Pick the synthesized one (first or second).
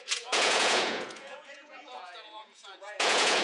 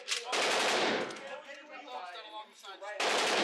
first